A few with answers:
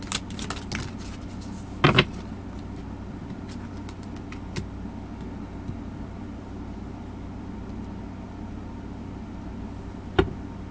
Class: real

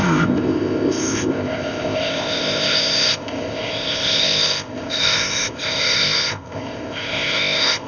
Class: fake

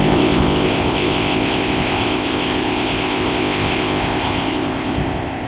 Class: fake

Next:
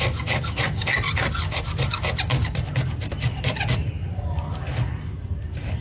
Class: real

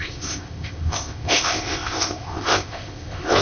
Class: fake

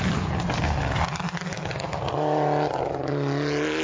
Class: real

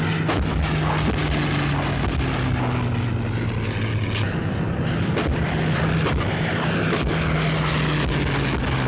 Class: real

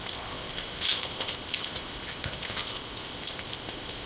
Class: fake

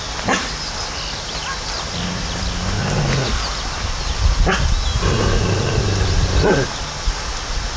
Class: real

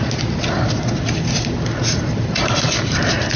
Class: real